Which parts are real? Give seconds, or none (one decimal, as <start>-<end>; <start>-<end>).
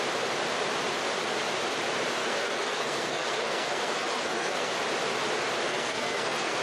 0.0-2.2; 4.7-5.7